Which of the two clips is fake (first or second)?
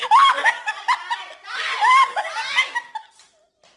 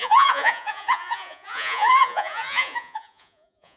second